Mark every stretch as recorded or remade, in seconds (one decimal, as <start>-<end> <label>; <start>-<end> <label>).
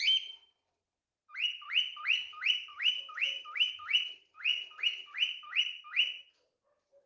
0.0-2.7 recorded; 2.7-3.7 remade; 3.7-7.1 recorded